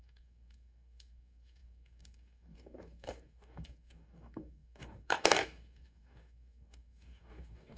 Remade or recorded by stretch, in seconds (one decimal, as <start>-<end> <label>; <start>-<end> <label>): 0.0-7.8 remade